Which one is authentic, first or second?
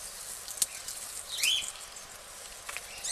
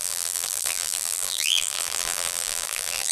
first